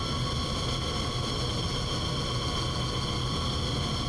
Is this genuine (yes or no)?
yes